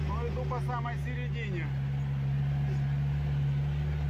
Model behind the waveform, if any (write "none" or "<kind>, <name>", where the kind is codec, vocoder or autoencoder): none